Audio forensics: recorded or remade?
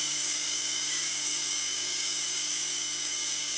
remade